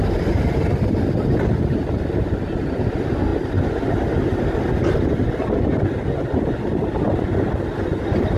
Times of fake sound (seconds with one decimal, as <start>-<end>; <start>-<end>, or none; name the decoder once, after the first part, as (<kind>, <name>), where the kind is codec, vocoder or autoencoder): none

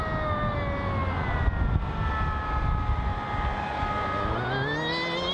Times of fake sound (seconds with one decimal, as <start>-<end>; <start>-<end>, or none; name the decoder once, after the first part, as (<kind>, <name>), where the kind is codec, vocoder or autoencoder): none